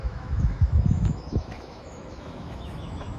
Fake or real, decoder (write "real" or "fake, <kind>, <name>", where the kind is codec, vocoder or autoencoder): fake, autoencoder, DAC-VAE